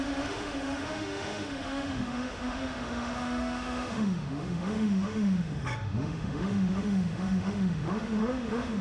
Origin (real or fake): fake